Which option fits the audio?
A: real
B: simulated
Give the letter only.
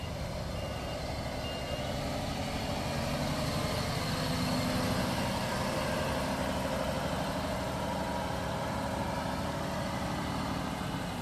A